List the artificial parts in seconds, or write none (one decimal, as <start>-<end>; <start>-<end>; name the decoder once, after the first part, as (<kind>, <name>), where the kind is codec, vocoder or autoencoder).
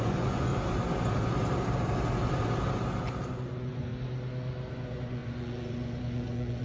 0.0-0.5 (vocoder, Vocos); 3.3-3.9; 4.7-6.6